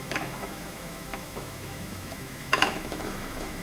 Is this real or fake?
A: fake